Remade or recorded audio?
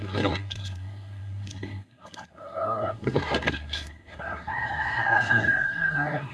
remade